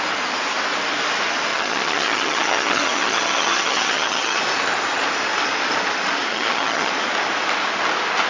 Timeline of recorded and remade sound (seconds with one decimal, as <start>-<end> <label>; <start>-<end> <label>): 0.0-1.5 recorded; 1.5-4.4 remade; 4.4-6.3 recorded; 6.3-6.9 remade; 6.9-8.3 recorded